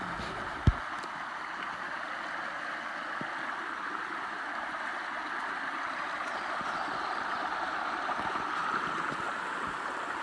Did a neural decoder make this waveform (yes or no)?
no